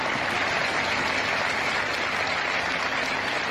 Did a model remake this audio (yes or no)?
no